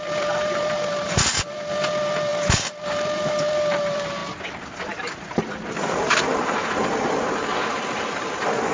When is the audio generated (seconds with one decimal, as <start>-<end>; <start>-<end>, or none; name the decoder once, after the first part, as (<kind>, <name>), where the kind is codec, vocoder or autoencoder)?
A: 0.0-4.2 (vocoder, BigVGAN v2); 5.4-8.7